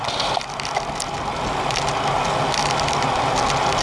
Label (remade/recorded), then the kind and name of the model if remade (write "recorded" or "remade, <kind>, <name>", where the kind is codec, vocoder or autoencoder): recorded